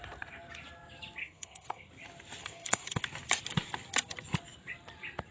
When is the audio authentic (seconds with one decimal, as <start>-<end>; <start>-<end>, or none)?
0.0-1.2; 1.9-2.4; 3.0-5.3